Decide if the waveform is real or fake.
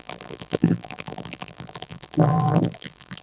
fake